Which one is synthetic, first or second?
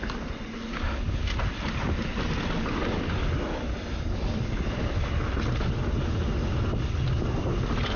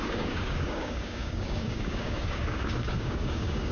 second